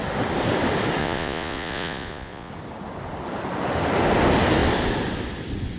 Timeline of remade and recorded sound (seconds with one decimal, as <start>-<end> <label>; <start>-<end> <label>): 0.0-1.0 recorded; 1.0-2.5 remade; 2.5-5.8 recorded

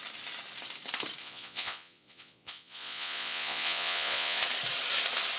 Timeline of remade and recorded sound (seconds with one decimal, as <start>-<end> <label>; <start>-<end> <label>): 0.0-1.2 recorded; 1.2-4.4 remade; 4.4-5.4 recorded

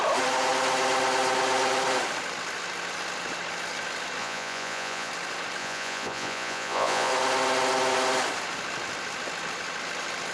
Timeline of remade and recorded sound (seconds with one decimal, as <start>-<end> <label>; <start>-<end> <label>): 0.0-4.2 recorded; 4.2-5.1 remade; 5.1-5.6 recorded; 5.6-7.1 remade; 7.1-10.3 recorded

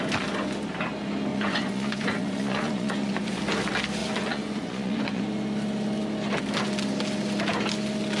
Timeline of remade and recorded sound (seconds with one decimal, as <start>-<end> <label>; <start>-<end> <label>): 0.0-1.3 recorded; 1.3-3.4 remade; 3.4-4.0 recorded; 4.0-5.2 remade; 5.2-8.2 recorded

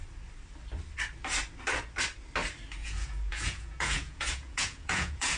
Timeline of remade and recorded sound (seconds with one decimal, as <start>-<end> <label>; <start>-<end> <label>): 0.0-2.8 recorded; 2.8-5.4 remade

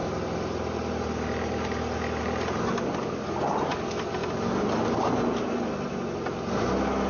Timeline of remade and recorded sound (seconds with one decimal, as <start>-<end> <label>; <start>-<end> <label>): 0.0-7.1 recorded

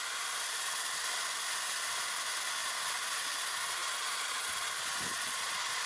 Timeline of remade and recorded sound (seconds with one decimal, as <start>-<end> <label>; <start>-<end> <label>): 0.0-3.8 recorded; 3.8-4.5 remade; 4.5-5.1 recorded; 5.1-5.9 remade